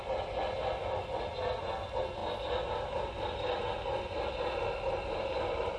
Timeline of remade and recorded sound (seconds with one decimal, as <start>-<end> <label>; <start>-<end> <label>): 0.0-5.8 recorded